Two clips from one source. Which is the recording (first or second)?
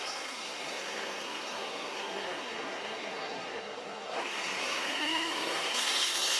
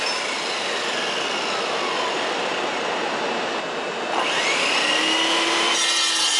second